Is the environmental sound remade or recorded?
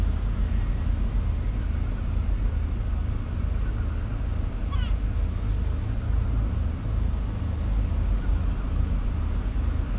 recorded